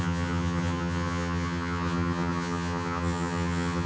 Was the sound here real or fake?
fake